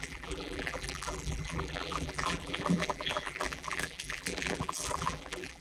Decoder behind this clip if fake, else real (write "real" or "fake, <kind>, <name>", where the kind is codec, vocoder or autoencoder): fake, vocoder, BigVGAN v2